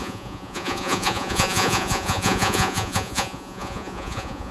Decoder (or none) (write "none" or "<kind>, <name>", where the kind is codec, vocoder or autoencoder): vocoder, Vocos